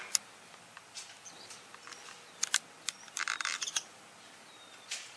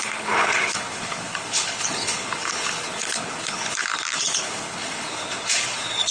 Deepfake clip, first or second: second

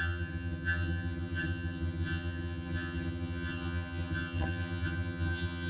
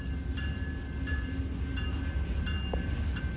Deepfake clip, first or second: first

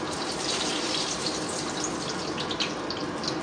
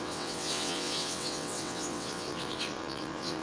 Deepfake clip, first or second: second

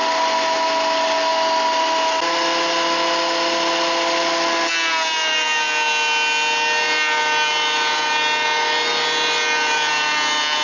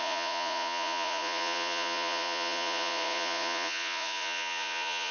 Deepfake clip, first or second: second